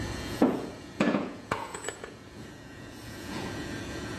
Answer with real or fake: fake